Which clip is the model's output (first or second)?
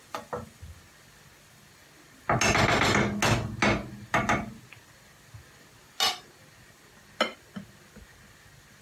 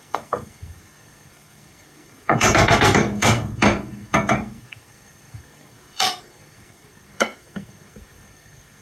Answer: second